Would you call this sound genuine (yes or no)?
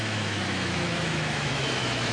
no